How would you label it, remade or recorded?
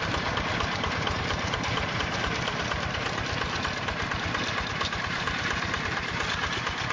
remade